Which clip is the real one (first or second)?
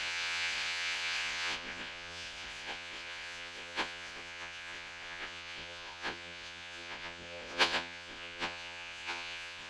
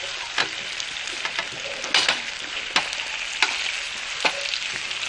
second